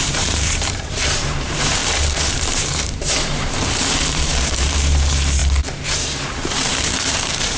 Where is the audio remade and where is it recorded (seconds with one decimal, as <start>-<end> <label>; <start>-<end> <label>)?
0.0-5.4 remade; 5.4-6.2 recorded; 6.2-7.6 remade